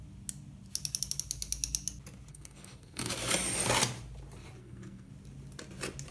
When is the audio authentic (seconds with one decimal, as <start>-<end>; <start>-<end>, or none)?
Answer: 0.0-2.3; 3.1-4.6; 5.1-6.1